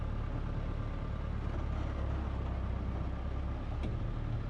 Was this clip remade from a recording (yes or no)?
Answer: no